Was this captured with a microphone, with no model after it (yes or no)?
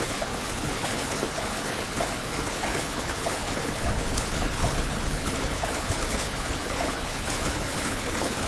no